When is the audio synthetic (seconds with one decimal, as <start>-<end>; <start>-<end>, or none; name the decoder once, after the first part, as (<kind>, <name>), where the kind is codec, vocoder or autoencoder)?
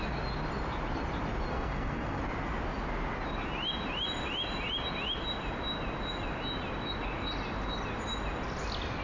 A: 1.5-2.2 (codec, SNAC)